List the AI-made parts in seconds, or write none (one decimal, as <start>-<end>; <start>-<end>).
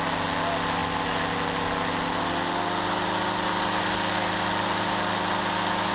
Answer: none